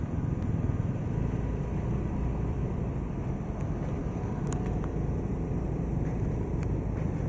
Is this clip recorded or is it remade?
recorded